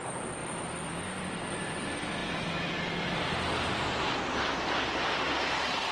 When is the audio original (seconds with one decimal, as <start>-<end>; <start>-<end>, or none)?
none